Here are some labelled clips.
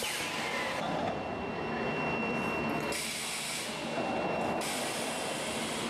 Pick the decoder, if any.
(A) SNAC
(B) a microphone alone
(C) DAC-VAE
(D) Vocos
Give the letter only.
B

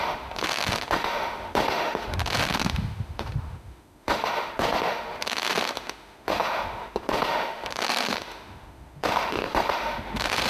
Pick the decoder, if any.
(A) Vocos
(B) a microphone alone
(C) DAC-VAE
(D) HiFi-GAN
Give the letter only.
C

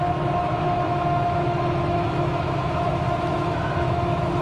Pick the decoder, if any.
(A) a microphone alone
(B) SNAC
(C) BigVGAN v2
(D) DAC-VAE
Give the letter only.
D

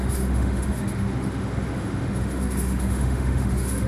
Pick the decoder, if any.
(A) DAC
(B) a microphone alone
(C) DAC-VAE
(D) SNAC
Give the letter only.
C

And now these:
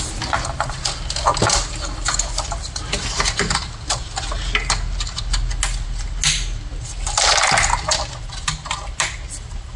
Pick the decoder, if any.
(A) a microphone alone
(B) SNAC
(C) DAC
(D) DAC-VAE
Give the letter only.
A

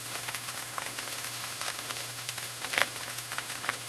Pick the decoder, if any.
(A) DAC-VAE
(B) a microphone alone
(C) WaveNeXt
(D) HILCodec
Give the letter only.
A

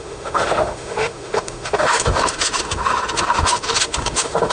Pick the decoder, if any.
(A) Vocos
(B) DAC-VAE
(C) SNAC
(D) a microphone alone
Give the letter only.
B